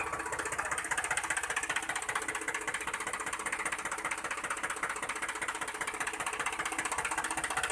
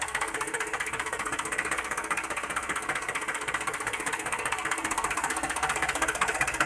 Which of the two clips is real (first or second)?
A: first